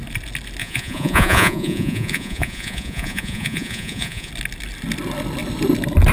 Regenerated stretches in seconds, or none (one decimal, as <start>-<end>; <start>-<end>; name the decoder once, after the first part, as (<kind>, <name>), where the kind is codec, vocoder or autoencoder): 0.6-4.3 (vocoder, Vocos)